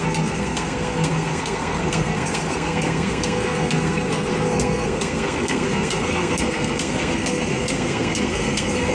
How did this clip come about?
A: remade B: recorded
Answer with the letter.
A